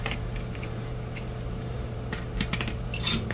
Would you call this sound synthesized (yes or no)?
yes